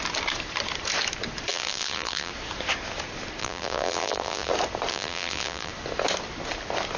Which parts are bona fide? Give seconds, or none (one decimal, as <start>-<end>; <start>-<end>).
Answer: 0.0-1.5; 2.3-3.4; 4.5-4.9; 5.7-7.0